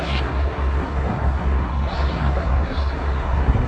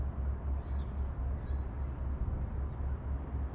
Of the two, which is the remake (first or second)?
first